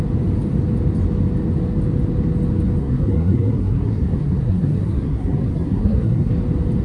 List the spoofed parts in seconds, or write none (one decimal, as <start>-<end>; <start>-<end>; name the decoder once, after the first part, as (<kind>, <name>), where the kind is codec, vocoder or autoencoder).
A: 2.8-6.3 (codec, SNAC)